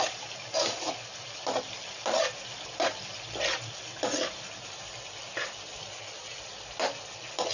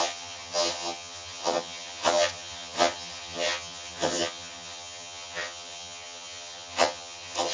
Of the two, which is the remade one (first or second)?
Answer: second